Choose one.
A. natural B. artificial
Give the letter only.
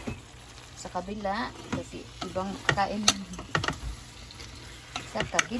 A